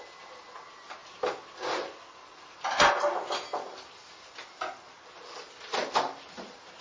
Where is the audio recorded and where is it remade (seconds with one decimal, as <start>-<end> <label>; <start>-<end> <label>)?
0.0-6.8 recorded

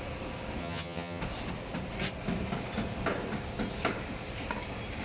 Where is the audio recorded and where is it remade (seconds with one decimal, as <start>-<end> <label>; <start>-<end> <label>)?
0.0-0.6 recorded; 0.6-1.2 remade; 1.2-5.0 recorded